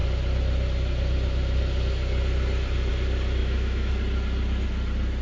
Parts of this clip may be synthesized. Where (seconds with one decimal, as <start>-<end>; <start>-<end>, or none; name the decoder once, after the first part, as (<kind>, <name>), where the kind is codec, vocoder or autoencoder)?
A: 3.4-3.9 (autoencoder, DAC-VAE)